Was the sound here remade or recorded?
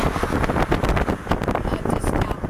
recorded